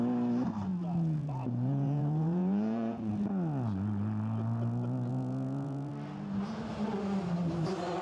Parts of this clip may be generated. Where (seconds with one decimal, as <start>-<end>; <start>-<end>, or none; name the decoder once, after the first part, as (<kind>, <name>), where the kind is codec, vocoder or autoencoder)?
0.7-3.1 (vocoder, Vocos); 5.1-5.9